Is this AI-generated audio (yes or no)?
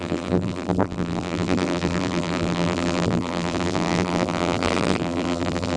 yes